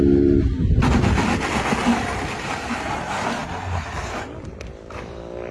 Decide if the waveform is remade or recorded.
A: recorded